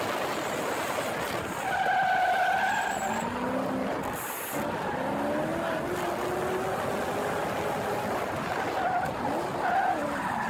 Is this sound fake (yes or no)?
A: no